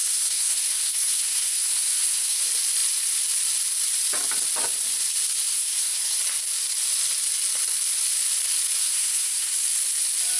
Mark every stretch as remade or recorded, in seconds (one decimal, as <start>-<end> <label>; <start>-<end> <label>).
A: 0.0-2.4 remade; 2.4-5.5 recorded; 5.5-6.2 remade; 6.2-8.8 recorded; 8.8-9.5 remade; 9.5-10.4 recorded